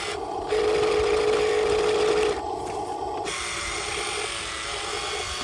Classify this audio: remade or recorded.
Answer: recorded